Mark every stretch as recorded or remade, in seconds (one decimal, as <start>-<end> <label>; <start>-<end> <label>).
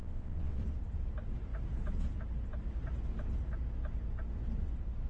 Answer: 0.0-0.6 remade; 0.6-5.1 recorded